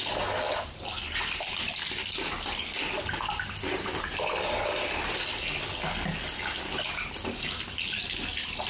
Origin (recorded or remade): recorded